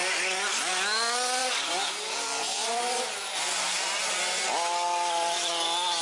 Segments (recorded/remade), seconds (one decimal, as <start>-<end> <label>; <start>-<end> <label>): 0.0-0.7 remade; 0.7-1.4 recorded; 1.4-4.1 remade; 4.1-6.0 recorded